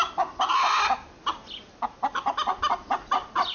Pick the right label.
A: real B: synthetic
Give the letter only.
A